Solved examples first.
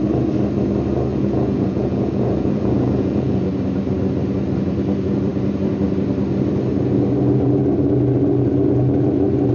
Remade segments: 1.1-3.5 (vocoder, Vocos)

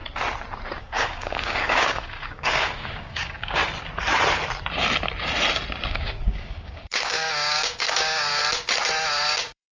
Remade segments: 0.8-3.6 (codec, DAC); 5.9-8.4; 9.1-9.7

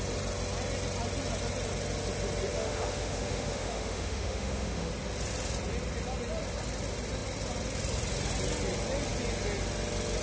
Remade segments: 2.5-4.9 (autoencoder, DAC-VAE)

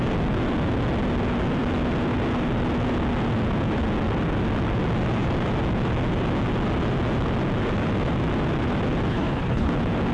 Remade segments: 9.1-9.7 (codec, HILCodec)

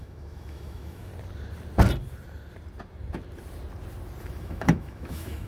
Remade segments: 0.0-1.1 (autoencoder, DAC-VAE); 4.4-5.5